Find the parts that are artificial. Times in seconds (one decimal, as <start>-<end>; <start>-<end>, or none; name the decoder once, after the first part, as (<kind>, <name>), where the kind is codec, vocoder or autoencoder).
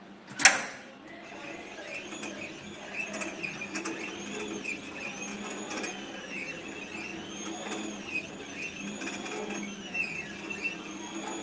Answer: 5.3-5.9 (vocoder, Vocos)